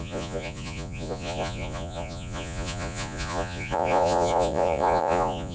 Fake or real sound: fake